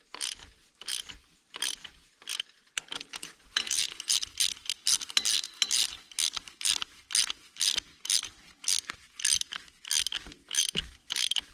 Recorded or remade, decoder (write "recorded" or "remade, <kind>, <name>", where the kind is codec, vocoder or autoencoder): recorded